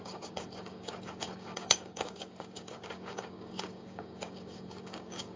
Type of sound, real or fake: fake